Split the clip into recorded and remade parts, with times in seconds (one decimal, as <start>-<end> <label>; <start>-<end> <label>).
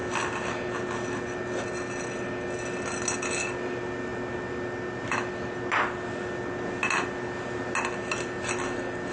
0.0-9.1 recorded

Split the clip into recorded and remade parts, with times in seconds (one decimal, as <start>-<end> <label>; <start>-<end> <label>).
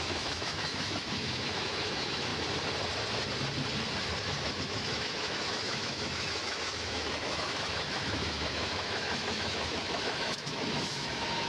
0.0-2.3 remade; 2.3-4.6 recorded; 4.6-11.5 remade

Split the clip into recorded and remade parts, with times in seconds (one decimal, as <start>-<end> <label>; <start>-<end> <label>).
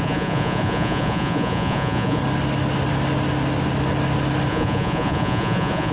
0.0-2.2 remade; 2.2-4.5 recorded; 4.5-5.9 remade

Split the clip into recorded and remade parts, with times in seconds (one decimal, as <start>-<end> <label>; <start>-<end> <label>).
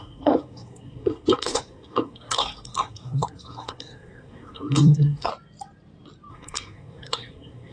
0.0-5.3 remade; 5.3-6.3 recorded; 6.3-7.7 remade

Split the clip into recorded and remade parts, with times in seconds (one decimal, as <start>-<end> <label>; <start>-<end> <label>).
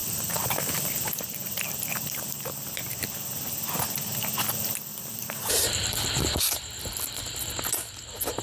0.0-0.9 remade; 0.9-4.9 recorded; 4.9-6.6 remade; 6.6-8.4 recorded